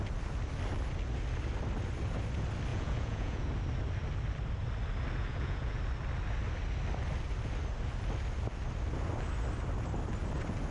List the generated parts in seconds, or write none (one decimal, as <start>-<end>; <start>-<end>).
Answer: 2.7-3.5; 5.2-5.8